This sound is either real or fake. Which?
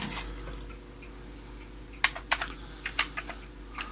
real